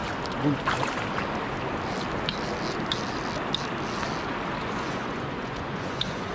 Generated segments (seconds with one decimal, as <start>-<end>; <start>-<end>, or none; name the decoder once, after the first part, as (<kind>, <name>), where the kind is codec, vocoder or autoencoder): 4.6-6.3 (vocoder, Vocos)